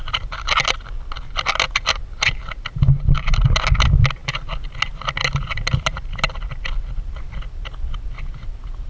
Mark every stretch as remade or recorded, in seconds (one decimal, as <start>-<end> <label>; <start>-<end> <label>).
0.0-8.9 recorded